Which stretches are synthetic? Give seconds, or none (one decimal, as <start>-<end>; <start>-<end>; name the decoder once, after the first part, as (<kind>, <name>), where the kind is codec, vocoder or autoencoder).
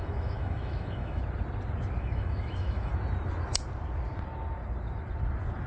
0.0-1.2 (autoencoder, DAC-VAE); 2.0-2.9